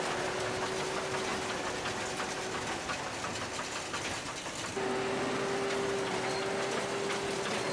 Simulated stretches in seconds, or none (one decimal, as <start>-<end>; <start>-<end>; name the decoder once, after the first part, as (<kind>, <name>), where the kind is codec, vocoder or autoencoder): none